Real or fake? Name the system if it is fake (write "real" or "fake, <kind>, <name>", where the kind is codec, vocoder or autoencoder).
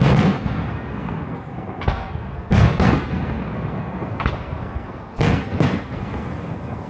fake, codec, SNAC